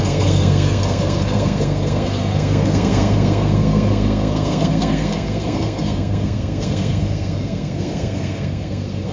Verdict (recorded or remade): remade